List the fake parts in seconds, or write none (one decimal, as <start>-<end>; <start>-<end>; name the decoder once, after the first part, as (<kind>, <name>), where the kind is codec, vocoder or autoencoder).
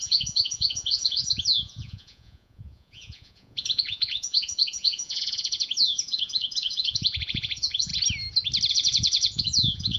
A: 0.0-7.9 (vocoder, Vocos); 8.7-10.0